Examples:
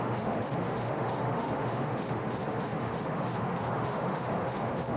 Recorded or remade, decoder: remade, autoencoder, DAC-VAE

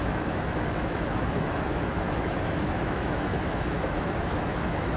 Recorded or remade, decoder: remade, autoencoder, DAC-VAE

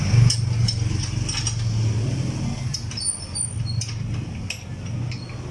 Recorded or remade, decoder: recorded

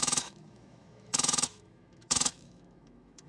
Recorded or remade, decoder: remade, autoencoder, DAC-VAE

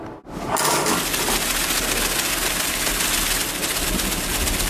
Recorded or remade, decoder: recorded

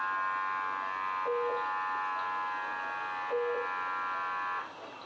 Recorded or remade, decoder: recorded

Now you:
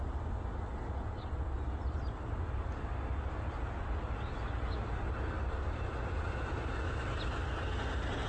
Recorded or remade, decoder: recorded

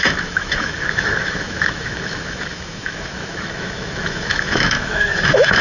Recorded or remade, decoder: remade, autoencoder, DAC-VAE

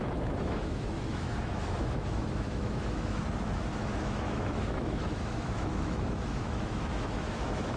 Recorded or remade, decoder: remade, autoencoder, DAC-VAE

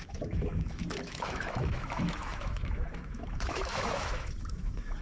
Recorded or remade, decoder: remade, autoencoder, DAC-VAE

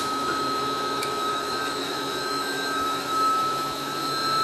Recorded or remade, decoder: remade, autoencoder, DAC-VAE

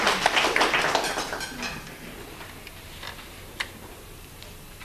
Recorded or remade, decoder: recorded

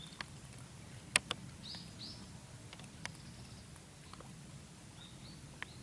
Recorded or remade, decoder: recorded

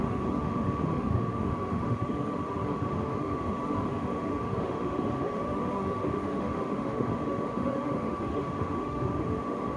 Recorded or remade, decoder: remade, autoencoder, DAC-VAE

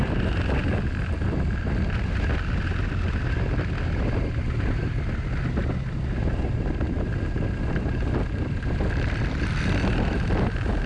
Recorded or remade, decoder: recorded